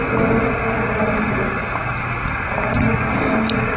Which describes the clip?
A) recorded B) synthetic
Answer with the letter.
A